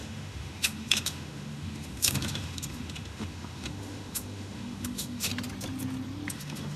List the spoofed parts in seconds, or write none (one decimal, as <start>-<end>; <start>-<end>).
0.0-5.3; 6.3-6.8